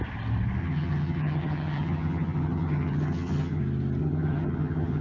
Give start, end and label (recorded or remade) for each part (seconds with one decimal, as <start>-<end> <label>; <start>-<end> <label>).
0.0-0.6 recorded; 0.6-3.6 remade; 3.6-4.0 recorded; 4.0-5.0 remade